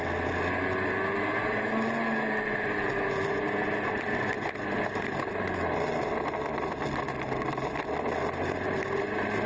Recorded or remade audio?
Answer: recorded